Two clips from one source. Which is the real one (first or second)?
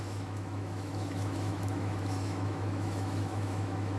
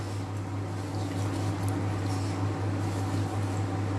second